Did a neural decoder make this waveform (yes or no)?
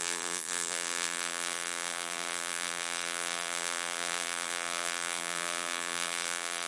yes